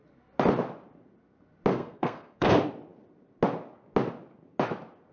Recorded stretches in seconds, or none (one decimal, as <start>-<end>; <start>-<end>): 0.0-1.7; 2.5-5.1